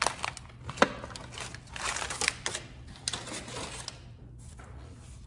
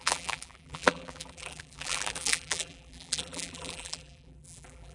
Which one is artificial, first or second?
second